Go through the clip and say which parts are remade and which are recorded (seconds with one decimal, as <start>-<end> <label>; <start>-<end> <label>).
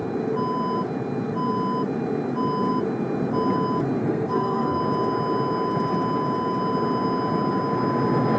0.0-4.0 recorded; 4.0-4.8 remade; 4.8-8.4 recorded